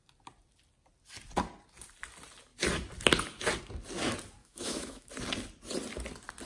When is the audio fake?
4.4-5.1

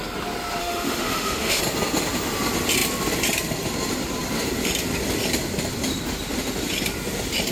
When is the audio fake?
0.6-1.6

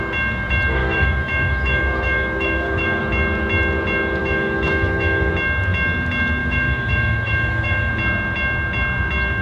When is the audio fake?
0.8-3.0; 4.2-5.3; 6.4-7.9

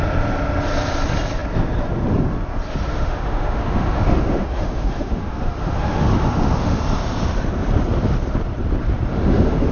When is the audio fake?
2.9-6.8; 9.1-9.7